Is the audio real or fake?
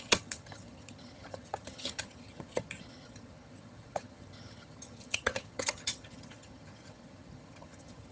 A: fake